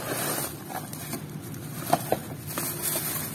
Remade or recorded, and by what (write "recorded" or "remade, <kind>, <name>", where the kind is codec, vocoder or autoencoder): recorded